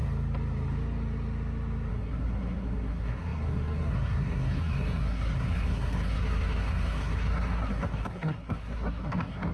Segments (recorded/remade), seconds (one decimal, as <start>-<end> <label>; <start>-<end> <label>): 0.0-1.9 recorded; 1.9-9.5 remade